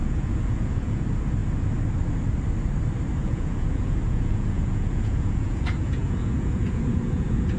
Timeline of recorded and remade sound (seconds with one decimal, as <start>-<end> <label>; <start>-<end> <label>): 0.0-1.0 remade; 1.0-3.2 recorded; 3.2-7.6 remade